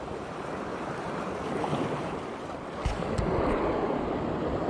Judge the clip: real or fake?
real